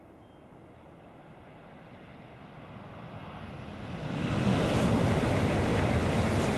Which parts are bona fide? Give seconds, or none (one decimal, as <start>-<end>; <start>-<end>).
0.0-6.6